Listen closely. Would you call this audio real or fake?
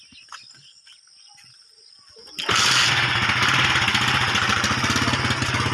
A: real